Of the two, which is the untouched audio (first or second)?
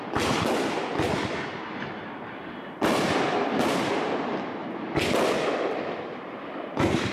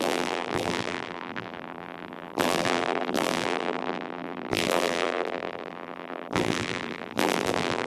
first